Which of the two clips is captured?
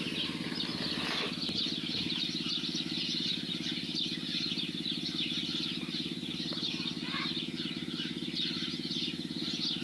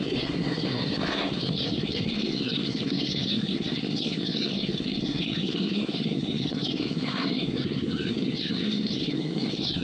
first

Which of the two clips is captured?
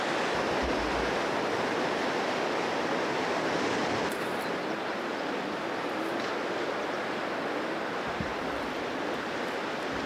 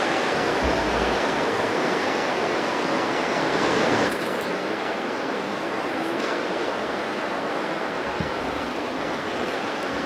first